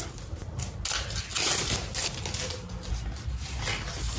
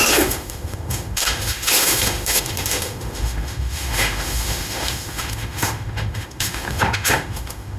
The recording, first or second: first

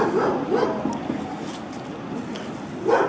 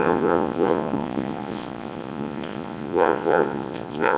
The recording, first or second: first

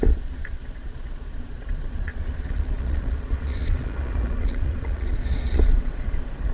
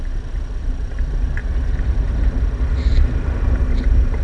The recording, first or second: second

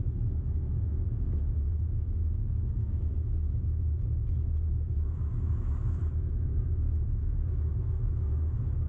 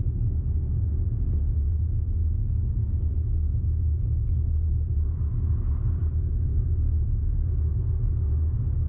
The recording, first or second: second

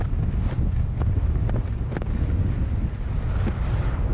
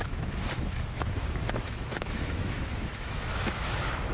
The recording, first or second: first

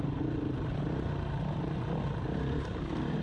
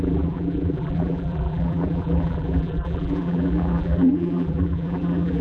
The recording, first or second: first